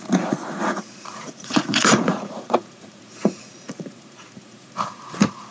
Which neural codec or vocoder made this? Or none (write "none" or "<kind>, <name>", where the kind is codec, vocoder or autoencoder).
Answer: vocoder, Vocos